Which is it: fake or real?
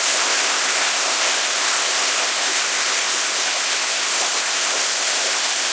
fake